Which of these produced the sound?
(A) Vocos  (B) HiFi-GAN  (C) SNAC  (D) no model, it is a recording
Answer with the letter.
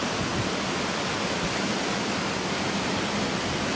D